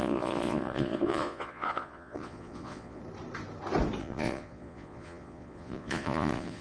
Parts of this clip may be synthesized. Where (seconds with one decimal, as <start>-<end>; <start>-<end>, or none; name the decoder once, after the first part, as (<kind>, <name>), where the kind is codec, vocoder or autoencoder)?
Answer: 0.0-3.0 (vocoder, Vocos); 4.0-6.6